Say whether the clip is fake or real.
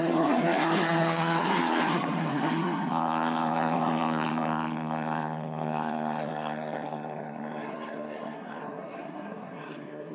fake